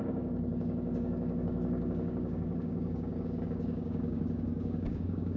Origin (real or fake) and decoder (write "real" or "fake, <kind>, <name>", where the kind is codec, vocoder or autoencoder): fake, codec, DAC